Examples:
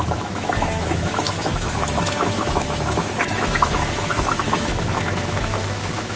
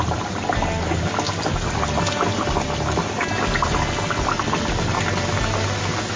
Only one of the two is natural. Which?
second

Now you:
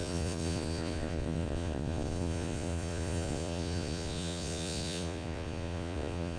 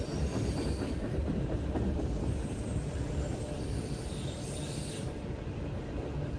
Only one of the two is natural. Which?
second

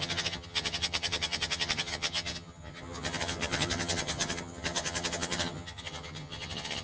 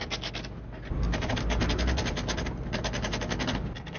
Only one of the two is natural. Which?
second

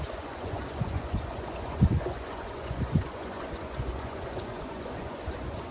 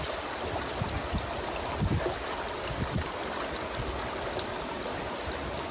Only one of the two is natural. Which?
second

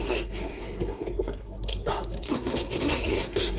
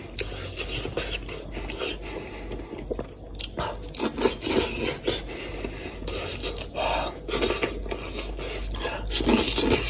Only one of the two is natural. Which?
second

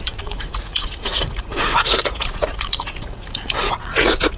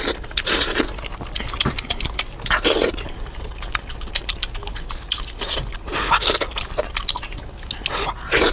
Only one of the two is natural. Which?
second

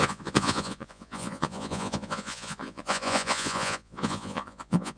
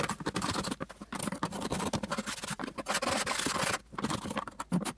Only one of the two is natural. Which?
second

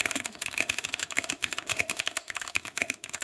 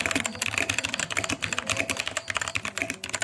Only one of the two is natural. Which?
second